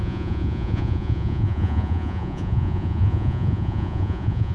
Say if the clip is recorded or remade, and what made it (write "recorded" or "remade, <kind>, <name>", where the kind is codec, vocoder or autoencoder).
remade, vocoder, Vocos